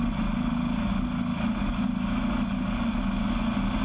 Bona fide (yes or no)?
yes